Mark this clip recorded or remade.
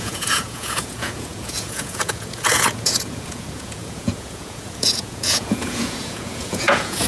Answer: remade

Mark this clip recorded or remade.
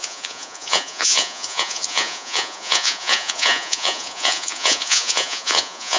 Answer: remade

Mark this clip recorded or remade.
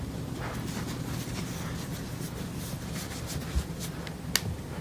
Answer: recorded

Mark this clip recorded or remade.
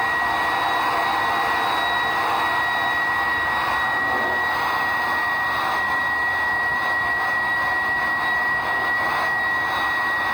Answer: recorded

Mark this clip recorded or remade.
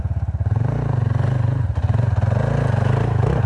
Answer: recorded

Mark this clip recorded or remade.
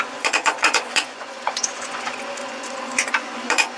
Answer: remade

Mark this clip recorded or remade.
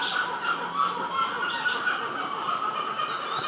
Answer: recorded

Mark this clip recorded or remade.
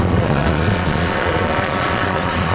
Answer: remade